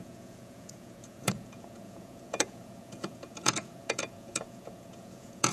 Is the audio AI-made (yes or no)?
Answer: yes